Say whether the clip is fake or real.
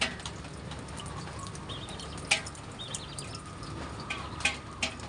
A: real